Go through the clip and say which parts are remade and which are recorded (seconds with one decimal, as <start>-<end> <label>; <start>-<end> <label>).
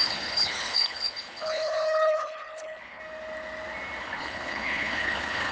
0.0-3.0 remade; 3.0-4.0 recorded; 4.0-5.5 remade